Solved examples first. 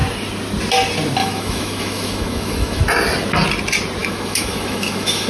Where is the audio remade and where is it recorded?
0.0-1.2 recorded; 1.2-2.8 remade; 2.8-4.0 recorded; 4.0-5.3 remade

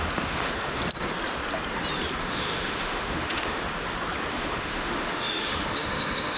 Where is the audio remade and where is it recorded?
0.0-0.8 remade; 0.8-2.2 recorded; 2.2-3.6 remade; 3.6-4.3 recorded; 4.3-6.4 remade

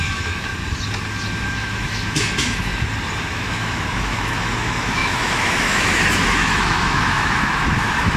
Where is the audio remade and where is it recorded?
0.0-0.5 remade; 0.5-1.5 recorded; 1.5-2.7 remade; 2.7-3.2 recorded; 3.2-8.2 remade

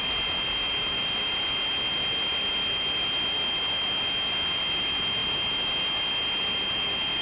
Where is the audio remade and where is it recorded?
0.0-7.2 recorded

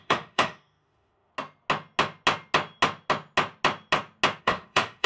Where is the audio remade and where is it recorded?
0.0-1.3 remade; 1.3-4.4 recorded; 4.4-5.1 remade